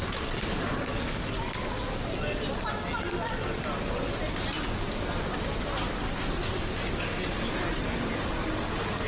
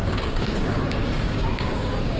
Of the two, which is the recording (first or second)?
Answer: first